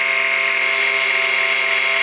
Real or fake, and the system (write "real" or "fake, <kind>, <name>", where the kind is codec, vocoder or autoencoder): real